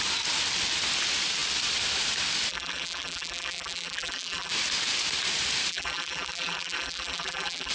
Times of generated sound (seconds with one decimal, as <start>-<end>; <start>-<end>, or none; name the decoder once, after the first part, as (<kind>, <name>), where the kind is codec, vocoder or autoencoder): 2.5-4.5 (vocoder, BigVGAN v2); 5.7-7.7